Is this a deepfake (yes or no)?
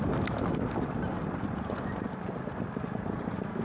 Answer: no